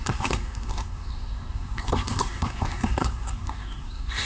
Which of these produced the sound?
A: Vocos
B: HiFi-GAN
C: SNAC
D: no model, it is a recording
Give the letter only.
C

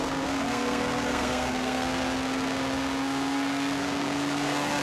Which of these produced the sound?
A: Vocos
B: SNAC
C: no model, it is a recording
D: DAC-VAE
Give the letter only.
B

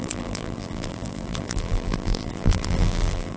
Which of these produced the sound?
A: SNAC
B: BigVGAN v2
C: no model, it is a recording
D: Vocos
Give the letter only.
B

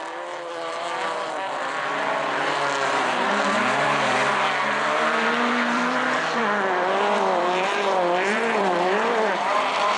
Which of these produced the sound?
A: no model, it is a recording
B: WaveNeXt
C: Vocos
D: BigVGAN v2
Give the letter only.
D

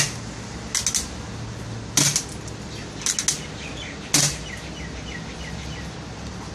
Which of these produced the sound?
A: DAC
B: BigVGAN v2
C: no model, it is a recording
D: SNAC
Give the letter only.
C